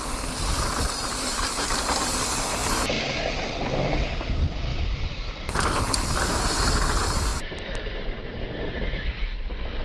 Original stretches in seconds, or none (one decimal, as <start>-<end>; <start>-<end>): 0.0-4.7; 5.8-7.3; 9.3-9.8